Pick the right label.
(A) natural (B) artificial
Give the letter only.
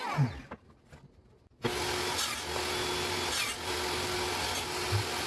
A